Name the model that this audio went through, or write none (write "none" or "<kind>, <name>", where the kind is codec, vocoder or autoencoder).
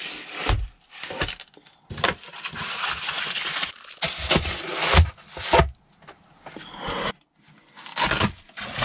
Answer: none